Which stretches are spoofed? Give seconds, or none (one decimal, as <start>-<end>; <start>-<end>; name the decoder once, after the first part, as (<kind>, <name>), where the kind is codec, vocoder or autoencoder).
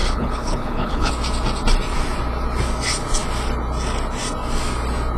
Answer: 0.0-1.1 (codec, HILCodec)